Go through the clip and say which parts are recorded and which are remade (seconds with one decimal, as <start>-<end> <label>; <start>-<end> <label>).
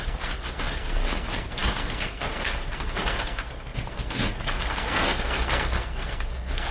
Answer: 0.0-6.7 remade